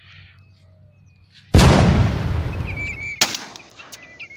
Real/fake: real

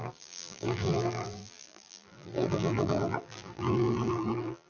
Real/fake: fake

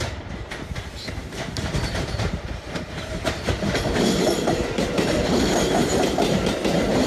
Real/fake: fake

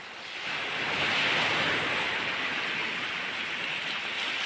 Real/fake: real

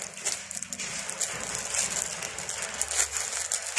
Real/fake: real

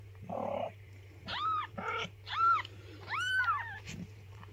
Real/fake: fake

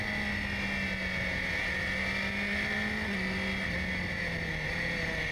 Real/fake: real